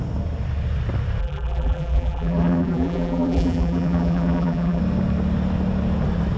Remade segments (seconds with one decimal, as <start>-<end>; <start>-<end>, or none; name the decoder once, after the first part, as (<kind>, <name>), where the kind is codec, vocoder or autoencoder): 1.2-4.8 (vocoder, BigVGAN v2)